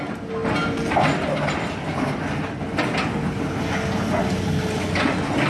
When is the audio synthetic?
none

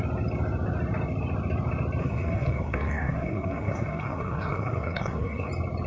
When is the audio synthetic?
2.0-5.5

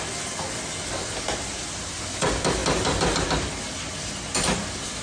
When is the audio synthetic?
none

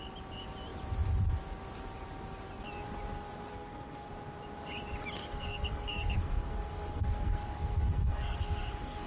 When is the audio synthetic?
3.5-4.1; 5.2-9.1

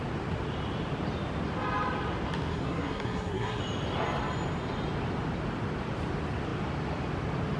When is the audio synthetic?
2.5-3.6

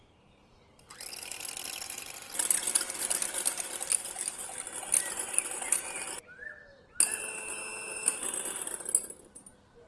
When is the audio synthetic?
none